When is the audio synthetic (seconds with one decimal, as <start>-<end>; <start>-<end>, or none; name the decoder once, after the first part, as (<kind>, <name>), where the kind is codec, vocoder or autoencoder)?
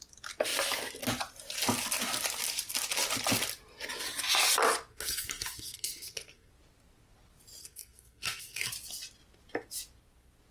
4.9-6.5 (codec, SNAC); 7.6-8.7